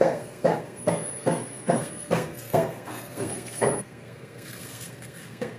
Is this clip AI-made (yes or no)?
yes